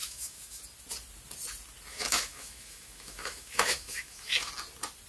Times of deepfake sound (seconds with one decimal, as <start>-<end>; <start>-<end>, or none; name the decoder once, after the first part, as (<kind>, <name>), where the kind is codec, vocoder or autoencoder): 0.0-0.6 (autoencoder, DAC-VAE); 1.9-4.5